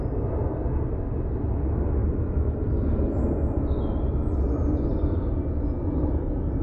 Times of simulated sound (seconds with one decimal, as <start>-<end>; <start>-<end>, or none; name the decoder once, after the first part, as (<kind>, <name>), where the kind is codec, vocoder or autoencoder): none